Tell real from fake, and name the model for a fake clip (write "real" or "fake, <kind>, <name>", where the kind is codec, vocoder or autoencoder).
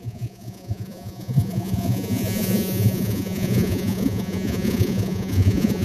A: fake, vocoder, Vocos